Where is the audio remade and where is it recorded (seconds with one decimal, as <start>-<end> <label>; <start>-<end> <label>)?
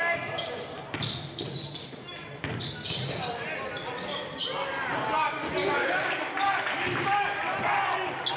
0.0-5.6 recorded; 5.6-6.2 remade; 6.2-8.4 recorded